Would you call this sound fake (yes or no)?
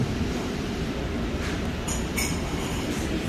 yes